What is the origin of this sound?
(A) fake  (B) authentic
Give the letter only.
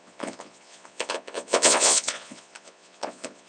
A